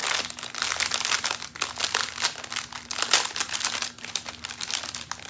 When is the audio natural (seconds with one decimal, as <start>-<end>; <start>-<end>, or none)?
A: 0.0-5.3